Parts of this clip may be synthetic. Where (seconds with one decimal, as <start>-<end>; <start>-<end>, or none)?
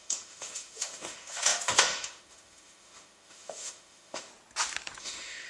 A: 0.0-4.3; 5.0-5.5